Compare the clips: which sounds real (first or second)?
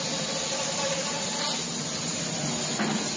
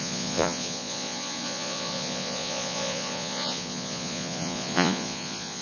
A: first